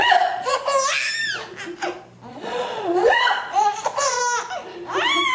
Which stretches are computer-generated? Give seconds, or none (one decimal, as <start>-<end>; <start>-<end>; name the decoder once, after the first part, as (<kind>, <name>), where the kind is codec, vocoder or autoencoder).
0.0-0.6 (vocoder, Vocos); 2.3-4.2